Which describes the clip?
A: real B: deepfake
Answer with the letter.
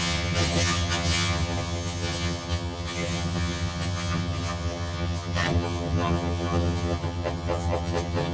B